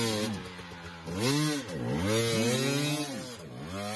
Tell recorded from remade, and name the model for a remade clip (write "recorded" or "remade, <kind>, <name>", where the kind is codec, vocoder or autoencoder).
recorded